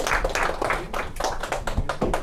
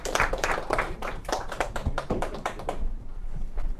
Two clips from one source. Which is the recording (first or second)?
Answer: first